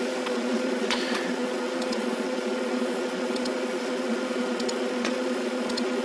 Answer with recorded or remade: remade